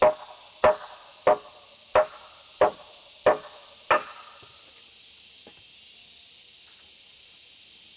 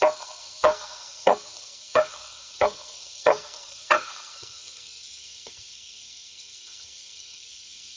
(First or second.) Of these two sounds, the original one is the first